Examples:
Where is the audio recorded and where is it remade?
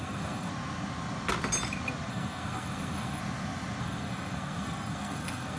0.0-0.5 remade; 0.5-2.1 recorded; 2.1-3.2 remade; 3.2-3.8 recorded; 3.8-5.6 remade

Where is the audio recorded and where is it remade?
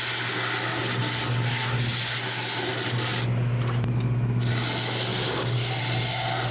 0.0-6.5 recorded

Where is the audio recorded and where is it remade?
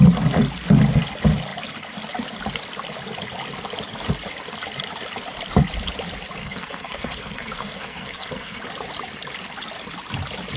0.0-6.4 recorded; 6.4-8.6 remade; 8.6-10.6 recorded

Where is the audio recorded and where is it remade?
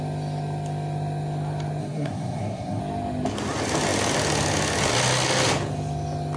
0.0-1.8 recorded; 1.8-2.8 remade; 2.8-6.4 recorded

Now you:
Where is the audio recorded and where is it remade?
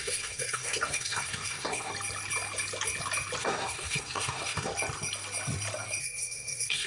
0.0-1.9 remade; 1.9-3.4 recorded; 3.4-4.7 remade; 4.7-6.0 recorded; 6.0-6.9 remade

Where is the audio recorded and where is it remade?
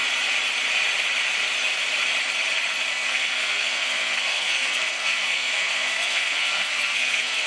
0.0-2.9 recorded; 2.9-7.5 remade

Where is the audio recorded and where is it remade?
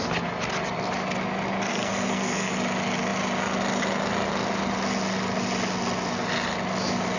0.0-1.7 recorded; 1.7-2.5 remade; 2.5-7.2 recorded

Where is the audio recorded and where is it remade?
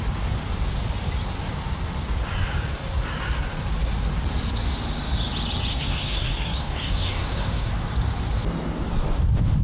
0.0-5.7 recorded; 5.7-7.7 remade; 7.7-9.6 recorded